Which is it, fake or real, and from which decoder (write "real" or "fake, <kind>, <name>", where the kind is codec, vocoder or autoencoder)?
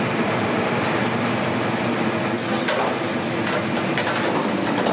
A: real